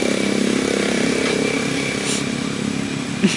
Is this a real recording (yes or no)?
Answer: yes